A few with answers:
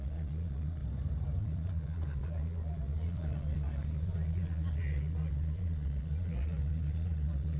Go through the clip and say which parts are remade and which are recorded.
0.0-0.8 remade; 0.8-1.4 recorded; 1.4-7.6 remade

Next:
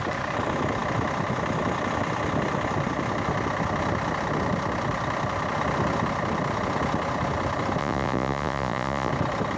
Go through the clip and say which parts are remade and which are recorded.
0.0-7.8 recorded; 7.8-9.1 remade; 9.1-9.6 recorded

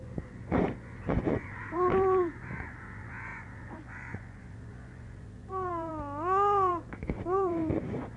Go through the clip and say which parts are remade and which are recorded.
0.0-5.9 remade; 5.9-6.7 recorded; 6.7-8.2 remade

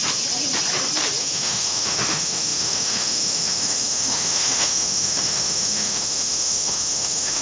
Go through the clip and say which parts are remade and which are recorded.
0.0-1.2 recorded; 1.2-7.4 remade